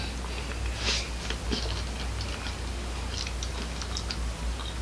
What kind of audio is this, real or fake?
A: real